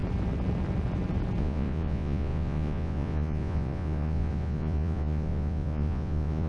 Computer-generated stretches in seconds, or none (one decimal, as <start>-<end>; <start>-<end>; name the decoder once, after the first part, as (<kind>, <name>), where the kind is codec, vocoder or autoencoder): 1.4-6.5 (vocoder, Vocos)